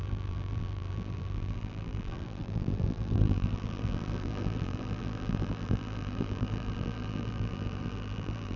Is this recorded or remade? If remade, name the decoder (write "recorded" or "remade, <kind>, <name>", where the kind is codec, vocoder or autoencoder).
remade, vocoder, BigVGAN v2